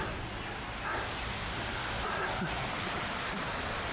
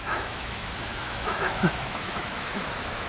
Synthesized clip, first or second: second